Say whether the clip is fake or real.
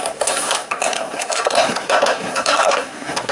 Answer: fake